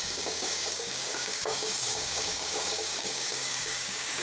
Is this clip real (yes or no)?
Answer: no